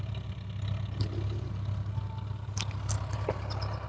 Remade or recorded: recorded